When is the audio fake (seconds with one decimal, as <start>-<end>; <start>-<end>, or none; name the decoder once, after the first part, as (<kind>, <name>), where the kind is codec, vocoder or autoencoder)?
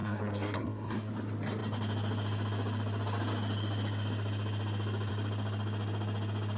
0.0-1.1 (codec, SNAC)